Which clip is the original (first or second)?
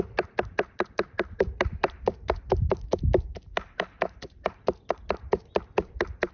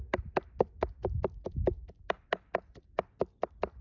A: second